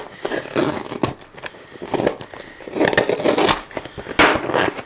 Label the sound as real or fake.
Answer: real